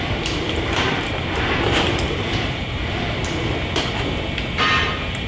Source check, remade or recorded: remade